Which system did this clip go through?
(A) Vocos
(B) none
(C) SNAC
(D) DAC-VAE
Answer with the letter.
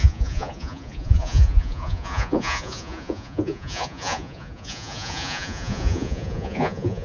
A